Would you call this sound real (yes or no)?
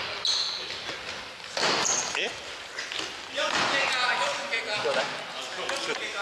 yes